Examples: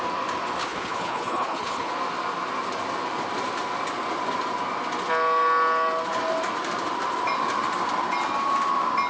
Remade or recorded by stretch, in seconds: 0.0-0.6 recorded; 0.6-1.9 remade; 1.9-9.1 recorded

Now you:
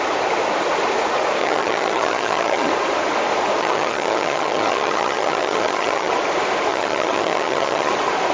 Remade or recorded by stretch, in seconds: 0.0-1.4 recorded; 1.4-2.7 remade; 2.7-3.6 recorded; 3.6-6.1 remade; 6.1-6.7 recorded; 6.7-7.9 remade; 7.9-8.3 recorded

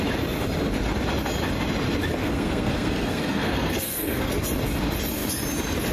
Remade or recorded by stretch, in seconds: 0.0-2.2 recorded; 2.2-4.3 remade; 4.3-5.9 recorded